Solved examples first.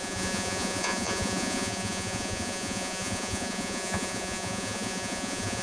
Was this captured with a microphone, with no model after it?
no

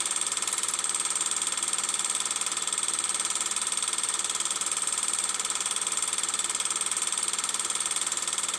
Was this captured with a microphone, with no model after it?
yes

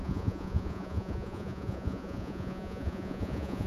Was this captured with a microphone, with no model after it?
no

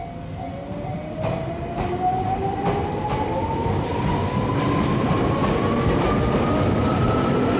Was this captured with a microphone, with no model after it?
yes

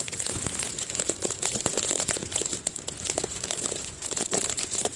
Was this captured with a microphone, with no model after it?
no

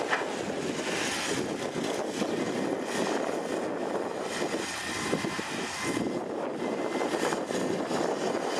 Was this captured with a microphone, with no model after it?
yes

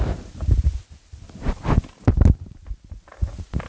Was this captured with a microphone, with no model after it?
yes